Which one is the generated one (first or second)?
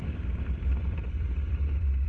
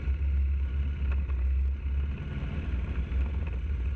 first